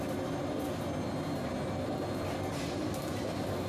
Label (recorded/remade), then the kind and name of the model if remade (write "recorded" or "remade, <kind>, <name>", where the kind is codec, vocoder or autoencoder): recorded